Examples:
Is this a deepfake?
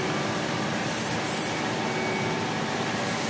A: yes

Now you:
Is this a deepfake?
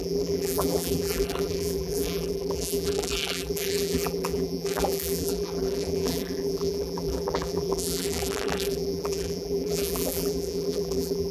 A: yes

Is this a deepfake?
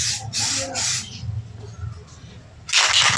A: no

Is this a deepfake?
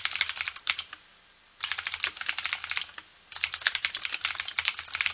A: yes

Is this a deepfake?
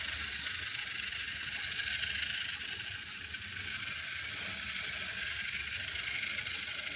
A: no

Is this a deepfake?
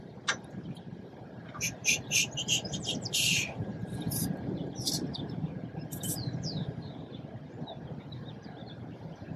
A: yes